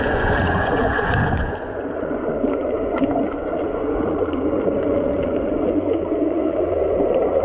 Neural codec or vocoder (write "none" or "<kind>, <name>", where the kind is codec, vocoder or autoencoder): vocoder, Vocos